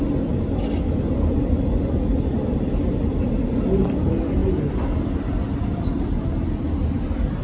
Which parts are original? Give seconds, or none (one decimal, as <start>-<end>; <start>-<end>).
0.0-7.4